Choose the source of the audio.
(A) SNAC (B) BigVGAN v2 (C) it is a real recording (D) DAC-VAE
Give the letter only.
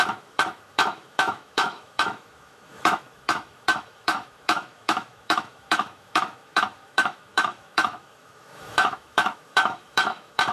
D